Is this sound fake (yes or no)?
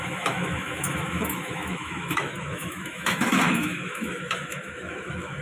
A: yes